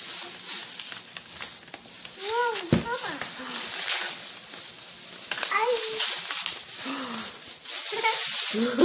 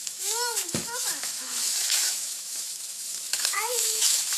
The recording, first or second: first